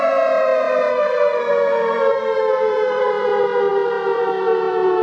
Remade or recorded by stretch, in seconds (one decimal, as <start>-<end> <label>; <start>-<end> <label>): 0.0-0.9 recorded; 0.9-3.0 remade; 3.0-5.0 recorded